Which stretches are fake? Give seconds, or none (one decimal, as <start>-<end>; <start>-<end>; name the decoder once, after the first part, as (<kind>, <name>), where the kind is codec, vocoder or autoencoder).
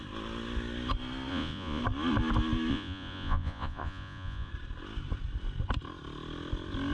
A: 1.3-1.8 (vocoder, Vocos); 2.7-4.5